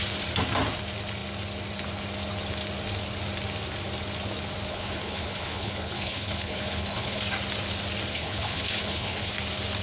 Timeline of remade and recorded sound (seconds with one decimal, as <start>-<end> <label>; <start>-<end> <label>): 0.0-4.7 recorded; 4.7-7.2 remade; 7.2-8.1 recorded; 8.1-9.3 remade; 9.3-9.8 recorded